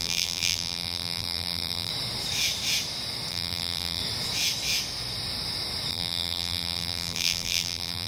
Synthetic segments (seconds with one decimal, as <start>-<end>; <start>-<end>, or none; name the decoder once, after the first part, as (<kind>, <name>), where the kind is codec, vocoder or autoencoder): 0.0-1.9 (vocoder, BigVGAN v2); 3.3-4.0; 5.9-8.1